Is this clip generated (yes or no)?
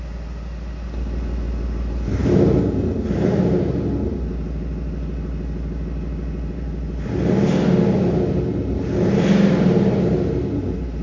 no